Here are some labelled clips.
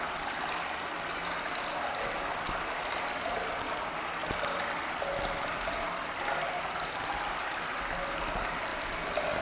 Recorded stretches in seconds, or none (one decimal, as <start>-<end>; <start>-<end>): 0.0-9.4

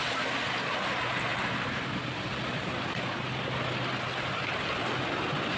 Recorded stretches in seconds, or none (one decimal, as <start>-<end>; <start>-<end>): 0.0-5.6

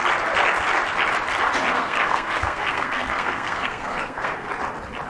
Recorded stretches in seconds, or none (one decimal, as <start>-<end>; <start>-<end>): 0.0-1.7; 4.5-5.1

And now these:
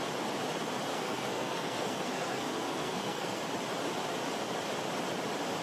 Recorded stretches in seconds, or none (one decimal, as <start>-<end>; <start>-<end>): 0.0-0.9; 3.4-5.6